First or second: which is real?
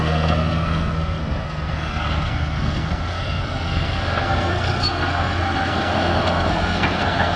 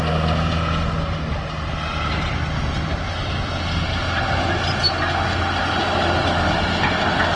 second